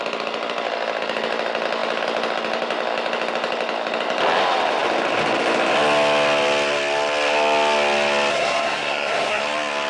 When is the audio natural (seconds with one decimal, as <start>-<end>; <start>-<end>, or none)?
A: 0.0-8.3; 9.4-9.9